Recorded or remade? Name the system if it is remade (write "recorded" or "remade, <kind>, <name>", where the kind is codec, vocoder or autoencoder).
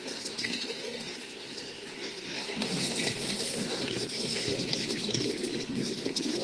remade, codec, SNAC